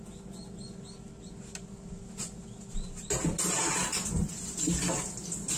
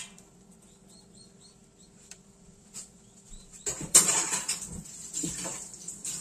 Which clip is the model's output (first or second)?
second